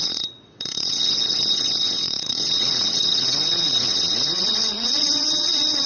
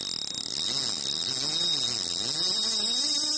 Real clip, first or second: second